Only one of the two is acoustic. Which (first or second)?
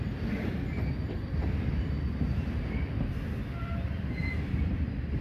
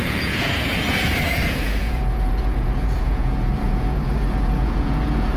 first